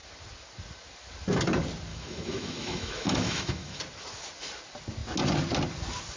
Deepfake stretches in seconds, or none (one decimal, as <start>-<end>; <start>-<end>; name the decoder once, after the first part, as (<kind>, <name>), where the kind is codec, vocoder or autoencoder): 1.9-3.8 (autoencoder, DAC-VAE)